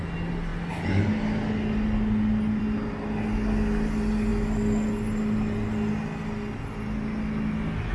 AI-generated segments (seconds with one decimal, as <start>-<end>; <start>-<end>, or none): none